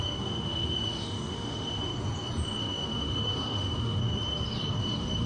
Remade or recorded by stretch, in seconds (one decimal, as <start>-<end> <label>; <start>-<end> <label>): 0.0-1.9 remade; 1.9-2.6 recorded; 2.6-4.0 remade; 4.0-4.8 recorded; 4.8-5.3 remade